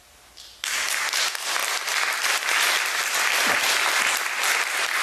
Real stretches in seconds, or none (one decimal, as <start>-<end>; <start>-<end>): 0.0-5.0